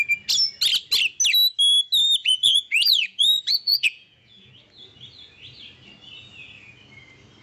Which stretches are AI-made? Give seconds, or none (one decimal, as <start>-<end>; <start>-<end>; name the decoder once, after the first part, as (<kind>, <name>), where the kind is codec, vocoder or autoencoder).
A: 2.2-4.5 (vocoder, Vocos)